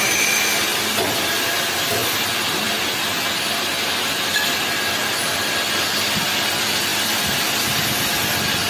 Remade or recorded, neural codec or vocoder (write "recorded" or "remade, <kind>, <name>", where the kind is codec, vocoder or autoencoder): recorded